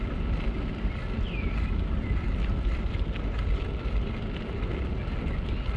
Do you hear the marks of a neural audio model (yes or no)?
no